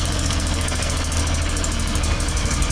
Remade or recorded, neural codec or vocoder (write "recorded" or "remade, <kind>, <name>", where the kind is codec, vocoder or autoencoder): remade, codec, SNAC